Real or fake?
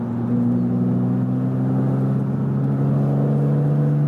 real